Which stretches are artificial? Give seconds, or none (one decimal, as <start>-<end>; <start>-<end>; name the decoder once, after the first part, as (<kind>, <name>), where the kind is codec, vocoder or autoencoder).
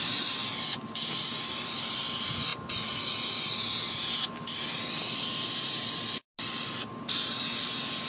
0.0-0.4 (vocoder, BigVGAN v2); 1.3-2.5; 7.1-8.1